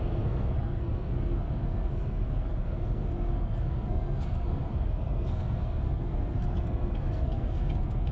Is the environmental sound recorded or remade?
remade